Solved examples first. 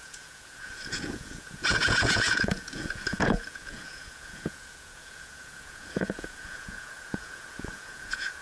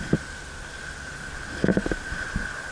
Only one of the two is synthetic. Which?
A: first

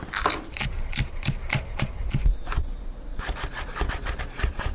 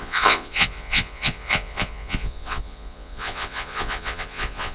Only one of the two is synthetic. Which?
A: second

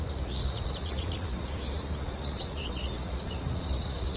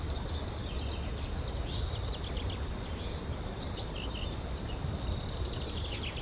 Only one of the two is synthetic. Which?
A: first